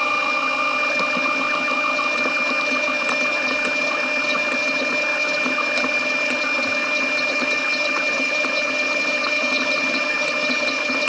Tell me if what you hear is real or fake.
real